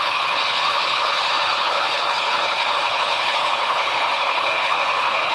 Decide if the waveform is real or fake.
fake